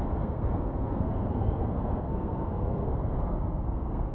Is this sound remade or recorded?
remade